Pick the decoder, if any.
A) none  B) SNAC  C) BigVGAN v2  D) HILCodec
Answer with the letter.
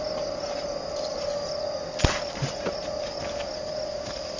A